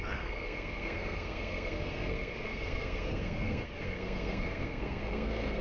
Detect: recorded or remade remade